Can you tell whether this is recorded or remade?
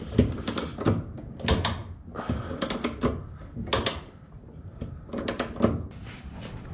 recorded